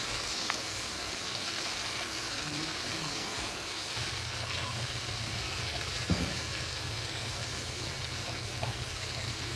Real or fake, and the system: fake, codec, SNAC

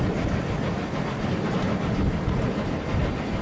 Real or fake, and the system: real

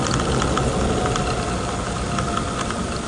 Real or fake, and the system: real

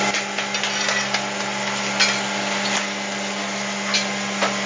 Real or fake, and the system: real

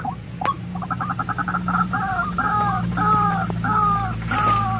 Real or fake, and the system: real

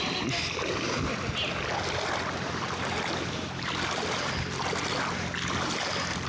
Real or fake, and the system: real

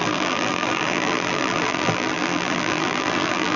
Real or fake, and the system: fake, vocoder, BigVGAN v2